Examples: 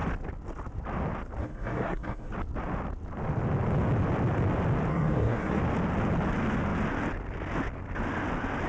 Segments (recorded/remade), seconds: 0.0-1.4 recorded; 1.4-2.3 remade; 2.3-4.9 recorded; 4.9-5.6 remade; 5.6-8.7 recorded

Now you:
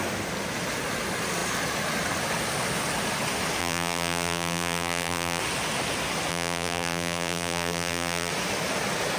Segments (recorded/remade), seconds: 0.0-3.6 recorded; 3.6-5.4 remade; 5.4-6.3 recorded; 6.3-8.3 remade; 8.3-9.2 recorded

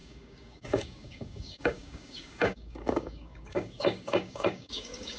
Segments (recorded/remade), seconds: 0.0-5.2 remade